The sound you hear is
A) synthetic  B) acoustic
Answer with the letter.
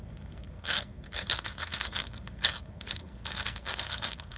A